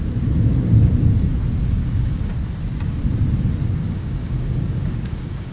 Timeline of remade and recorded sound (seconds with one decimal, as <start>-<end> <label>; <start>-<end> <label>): 0.0-1.6 recorded; 1.6-2.3 remade; 2.3-3.8 recorded; 3.8-5.5 remade